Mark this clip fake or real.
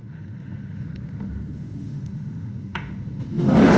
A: fake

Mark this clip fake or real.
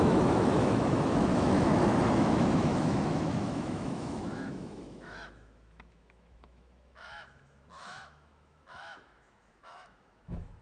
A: fake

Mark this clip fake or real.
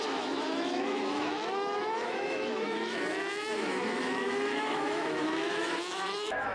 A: fake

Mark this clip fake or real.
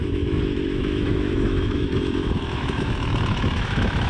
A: fake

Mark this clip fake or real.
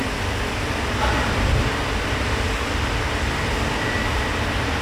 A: real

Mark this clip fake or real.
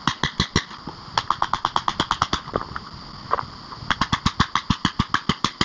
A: real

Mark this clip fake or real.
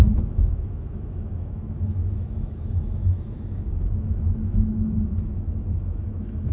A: fake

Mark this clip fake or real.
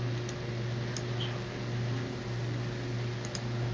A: real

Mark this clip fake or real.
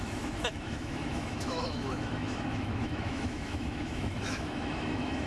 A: fake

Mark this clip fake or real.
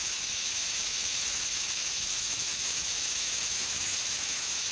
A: fake